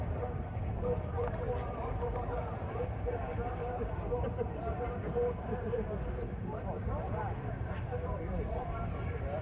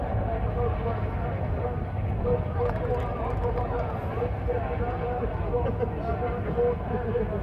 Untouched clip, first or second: second